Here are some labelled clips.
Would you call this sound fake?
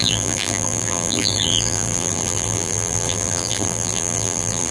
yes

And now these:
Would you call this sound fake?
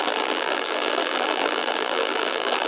yes